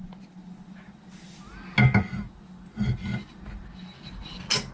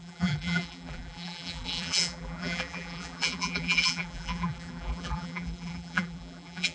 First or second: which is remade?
second